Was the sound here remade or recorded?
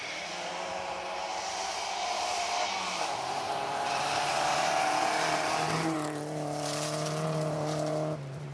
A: remade